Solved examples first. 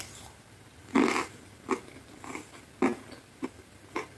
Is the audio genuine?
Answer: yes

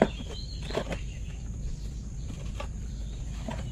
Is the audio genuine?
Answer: no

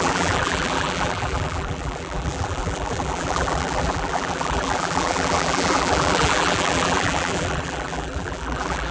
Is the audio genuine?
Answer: no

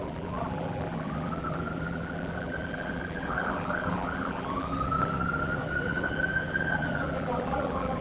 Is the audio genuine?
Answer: no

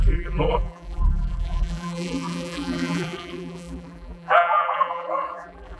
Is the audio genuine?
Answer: no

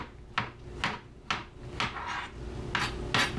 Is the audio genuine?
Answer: yes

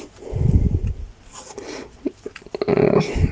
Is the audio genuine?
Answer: yes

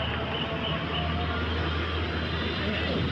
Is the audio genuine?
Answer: yes